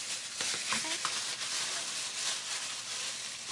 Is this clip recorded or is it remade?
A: recorded